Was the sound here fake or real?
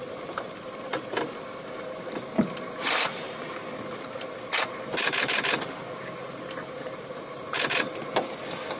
real